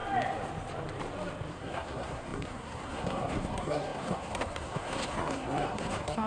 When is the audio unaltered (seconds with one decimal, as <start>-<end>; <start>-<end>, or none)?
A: 0.0-1.5